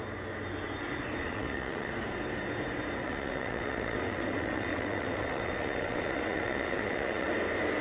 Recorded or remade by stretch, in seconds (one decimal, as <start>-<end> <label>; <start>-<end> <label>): 0.0-1.2 recorded; 1.2-1.9 remade; 1.9-3.0 recorded; 3.0-7.3 remade; 7.3-7.8 recorded